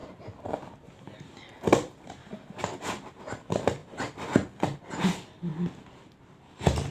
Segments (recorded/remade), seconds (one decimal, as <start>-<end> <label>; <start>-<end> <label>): 0.0-2.2 recorded; 2.2-2.8 remade; 2.8-6.9 recorded